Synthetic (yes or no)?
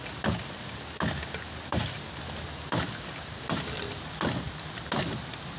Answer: no